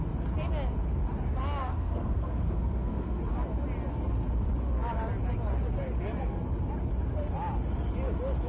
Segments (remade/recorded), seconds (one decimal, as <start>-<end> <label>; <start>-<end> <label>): 0.0-1.6 recorded; 1.6-3.2 remade; 3.2-8.5 recorded